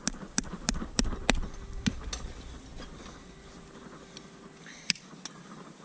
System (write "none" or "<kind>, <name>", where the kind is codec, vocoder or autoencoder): none